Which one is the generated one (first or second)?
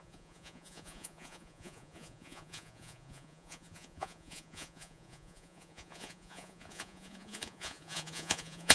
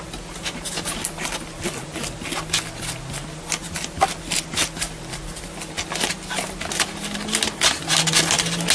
first